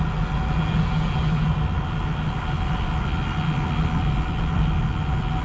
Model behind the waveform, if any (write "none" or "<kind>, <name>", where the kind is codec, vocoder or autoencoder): none